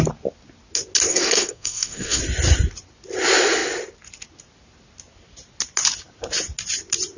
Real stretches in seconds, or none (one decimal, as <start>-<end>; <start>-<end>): 0.0-1.1; 2.2-7.2

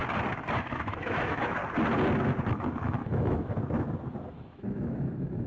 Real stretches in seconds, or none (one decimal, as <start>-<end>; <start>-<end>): 0.0-0.6; 1.6-2.5; 3.6-4.3

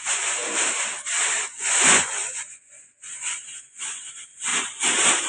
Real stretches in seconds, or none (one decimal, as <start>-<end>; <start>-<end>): 0.4-1.6; 4.5-5.3

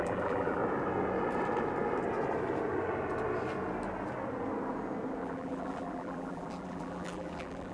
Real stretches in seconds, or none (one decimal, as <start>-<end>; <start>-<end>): 0.6-5.2

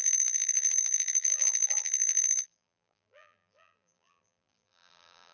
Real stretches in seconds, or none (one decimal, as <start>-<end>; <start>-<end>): none

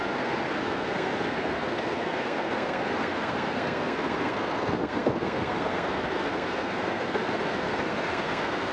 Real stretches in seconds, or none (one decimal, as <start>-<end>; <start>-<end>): none